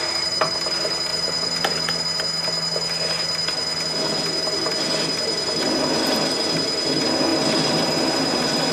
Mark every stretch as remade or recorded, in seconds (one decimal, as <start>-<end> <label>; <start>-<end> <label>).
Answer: 0.0-1.1 recorded; 1.1-2.0 remade; 2.0-8.7 recorded